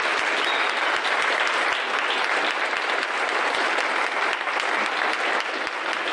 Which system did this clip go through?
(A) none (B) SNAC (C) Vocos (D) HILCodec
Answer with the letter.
A